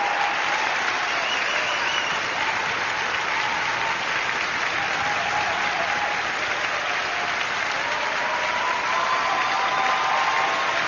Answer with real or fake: real